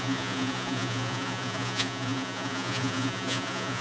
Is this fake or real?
fake